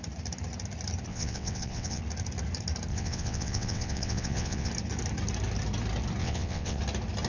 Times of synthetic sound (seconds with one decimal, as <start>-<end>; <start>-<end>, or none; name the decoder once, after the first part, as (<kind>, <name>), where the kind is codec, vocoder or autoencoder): 1.1-2.0 (vocoder, WaveNeXt); 2.9-4.7; 6.2-6.8